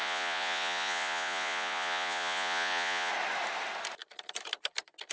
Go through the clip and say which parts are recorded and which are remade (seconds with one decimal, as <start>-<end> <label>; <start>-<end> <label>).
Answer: 0.0-3.1 remade; 3.1-5.1 recorded